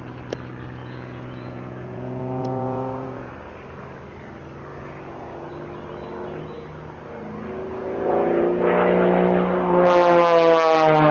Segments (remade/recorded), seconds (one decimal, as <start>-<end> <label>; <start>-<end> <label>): 0.0-0.8 recorded; 0.8-3.3 remade; 3.3-4.7 recorded; 4.7-5.5 remade; 5.5-7.7 recorded; 7.7-8.4 remade; 8.4-11.1 recorded